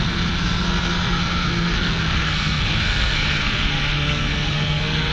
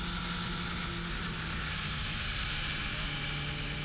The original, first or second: second